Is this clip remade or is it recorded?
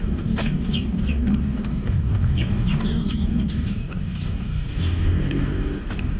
remade